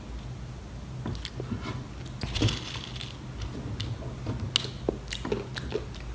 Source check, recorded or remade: recorded